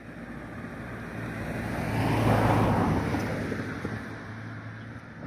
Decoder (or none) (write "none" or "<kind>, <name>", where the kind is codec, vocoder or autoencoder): none